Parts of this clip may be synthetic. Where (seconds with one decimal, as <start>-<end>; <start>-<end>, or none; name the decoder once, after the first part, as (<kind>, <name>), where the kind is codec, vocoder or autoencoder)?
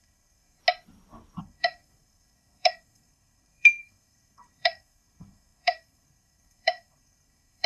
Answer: 0.0-0.6 (codec, SNAC); 1.4-7.7